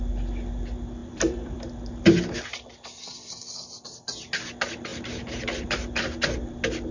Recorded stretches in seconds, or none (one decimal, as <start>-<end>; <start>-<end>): 0.0-1.0; 1.7-4.9; 6.0-6.9